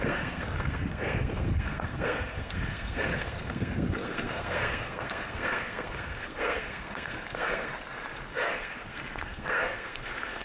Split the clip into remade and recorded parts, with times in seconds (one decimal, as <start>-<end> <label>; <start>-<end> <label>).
0.0-7.7 remade; 7.7-8.3 recorded; 8.3-10.4 remade